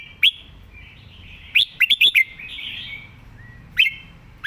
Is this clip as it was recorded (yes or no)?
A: no